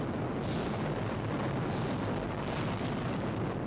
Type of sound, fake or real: real